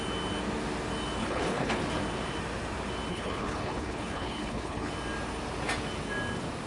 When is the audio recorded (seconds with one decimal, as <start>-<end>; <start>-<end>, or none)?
0.0-1.2; 1.8-3.1; 4.9-6.7